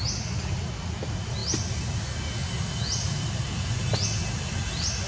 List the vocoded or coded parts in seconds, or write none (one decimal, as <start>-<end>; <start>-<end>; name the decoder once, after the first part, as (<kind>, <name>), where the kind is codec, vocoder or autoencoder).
none